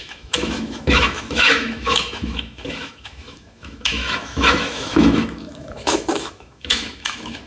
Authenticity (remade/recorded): remade